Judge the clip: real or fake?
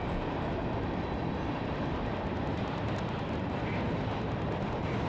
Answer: real